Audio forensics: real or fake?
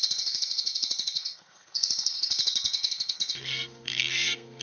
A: fake